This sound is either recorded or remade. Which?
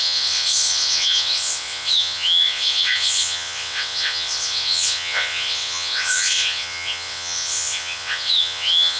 remade